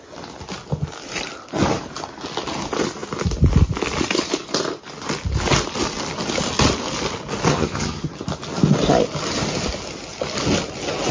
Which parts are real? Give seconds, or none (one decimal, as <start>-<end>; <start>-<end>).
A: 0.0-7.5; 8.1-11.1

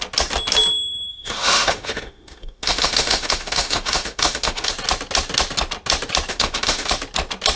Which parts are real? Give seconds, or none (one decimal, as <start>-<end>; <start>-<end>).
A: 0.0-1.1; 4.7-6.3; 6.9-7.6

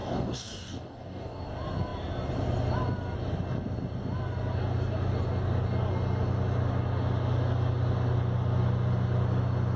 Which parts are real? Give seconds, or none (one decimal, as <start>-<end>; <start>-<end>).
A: 1.4-9.8

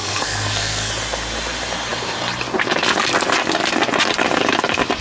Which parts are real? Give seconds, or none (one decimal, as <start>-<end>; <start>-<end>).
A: 0.9-5.0

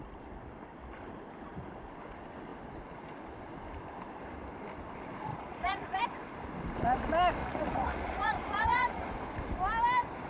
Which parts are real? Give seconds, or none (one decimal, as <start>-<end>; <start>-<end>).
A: 0.0-5.3; 6.0-7.4; 9.1-10.3

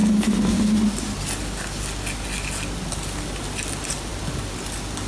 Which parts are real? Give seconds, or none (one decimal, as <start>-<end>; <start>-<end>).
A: 0.0-5.1

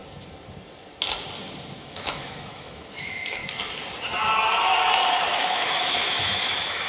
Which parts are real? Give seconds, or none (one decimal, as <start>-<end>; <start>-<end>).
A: 0.0-1.8; 3.4-5.1

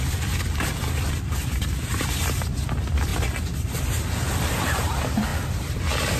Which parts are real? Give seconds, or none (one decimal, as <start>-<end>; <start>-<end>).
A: 3.1-3.7; 5.3-6.2